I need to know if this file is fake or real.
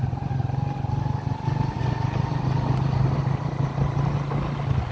real